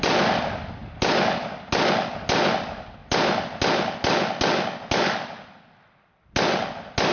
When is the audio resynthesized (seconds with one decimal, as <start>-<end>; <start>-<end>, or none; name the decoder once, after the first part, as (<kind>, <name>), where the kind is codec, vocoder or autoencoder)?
none